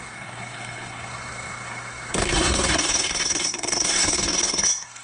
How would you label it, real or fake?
fake